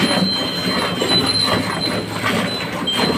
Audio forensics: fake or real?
real